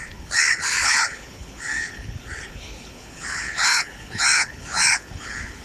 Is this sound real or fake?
fake